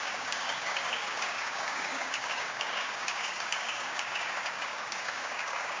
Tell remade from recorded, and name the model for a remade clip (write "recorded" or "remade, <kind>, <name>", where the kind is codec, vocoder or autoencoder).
remade, codec, DAC